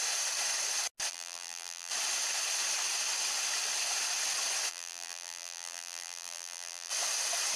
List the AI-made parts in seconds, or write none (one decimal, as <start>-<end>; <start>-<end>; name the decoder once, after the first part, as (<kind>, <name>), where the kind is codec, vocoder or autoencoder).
1.1-1.9 (vocoder, BigVGAN v2); 4.7-6.9